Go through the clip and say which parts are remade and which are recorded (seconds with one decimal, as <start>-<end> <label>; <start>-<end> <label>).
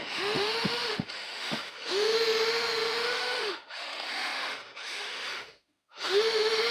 0.0-6.7 remade